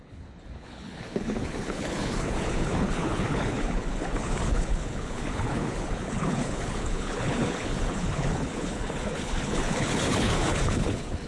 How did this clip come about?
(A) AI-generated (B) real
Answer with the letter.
A